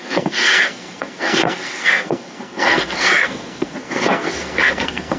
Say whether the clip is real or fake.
fake